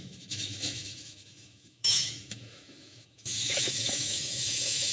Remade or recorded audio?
remade